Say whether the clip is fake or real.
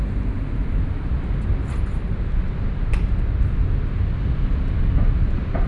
real